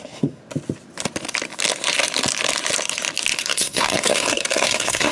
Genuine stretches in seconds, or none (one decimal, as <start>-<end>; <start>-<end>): 0.4-3.5